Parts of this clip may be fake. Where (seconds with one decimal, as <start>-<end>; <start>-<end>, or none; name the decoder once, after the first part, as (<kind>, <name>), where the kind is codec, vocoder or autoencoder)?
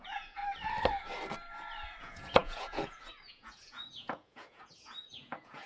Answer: 0.0-0.4 (vocoder, Vocos); 2.0-5.7